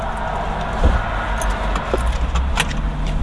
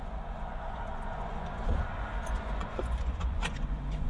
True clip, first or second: first